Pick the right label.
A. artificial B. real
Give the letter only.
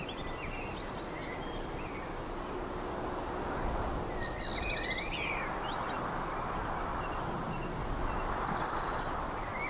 B